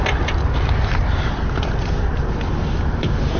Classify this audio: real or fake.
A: fake